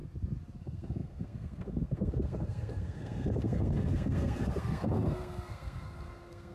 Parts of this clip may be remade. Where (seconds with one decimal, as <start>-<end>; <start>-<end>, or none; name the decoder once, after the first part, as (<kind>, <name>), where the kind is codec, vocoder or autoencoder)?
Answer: 0.6-6.5 (codec, SNAC)